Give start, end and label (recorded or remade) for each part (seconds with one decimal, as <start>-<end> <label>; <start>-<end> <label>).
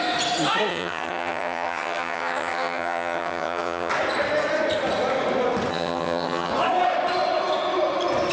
0.0-0.7 recorded; 0.7-3.9 remade; 3.9-5.7 recorded; 5.7-6.5 remade; 6.5-8.3 recorded